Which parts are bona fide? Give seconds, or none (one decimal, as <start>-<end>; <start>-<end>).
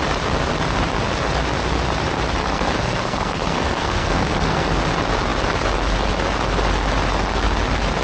0.0-2.4; 4.8-8.0